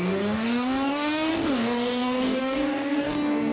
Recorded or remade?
remade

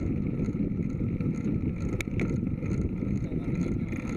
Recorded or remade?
recorded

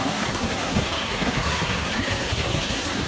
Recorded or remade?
remade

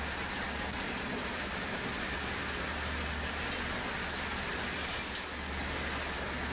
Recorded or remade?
recorded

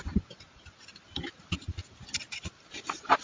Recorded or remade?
recorded